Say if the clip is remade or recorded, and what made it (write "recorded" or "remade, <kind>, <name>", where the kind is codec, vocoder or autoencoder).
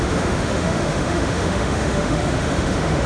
remade, autoencoder, DAC-VAE